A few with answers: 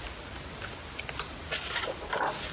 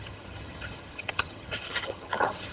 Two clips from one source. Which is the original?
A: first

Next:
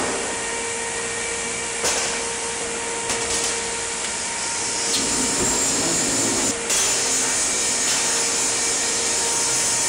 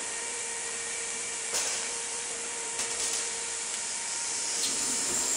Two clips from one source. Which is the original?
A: first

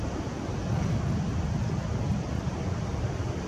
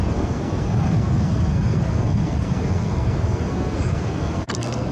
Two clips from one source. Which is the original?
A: first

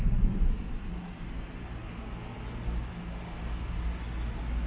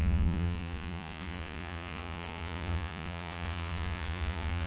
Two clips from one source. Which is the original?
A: first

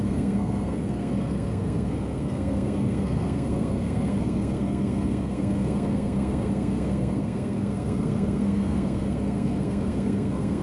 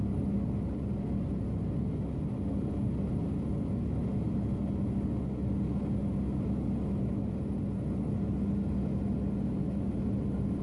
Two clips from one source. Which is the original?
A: second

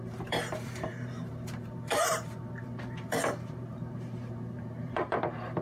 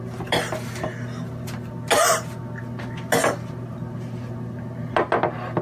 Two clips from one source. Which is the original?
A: second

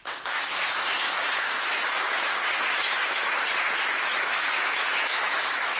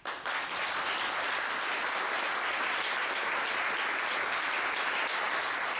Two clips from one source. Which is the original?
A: second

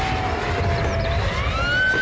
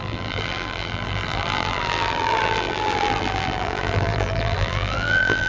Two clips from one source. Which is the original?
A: first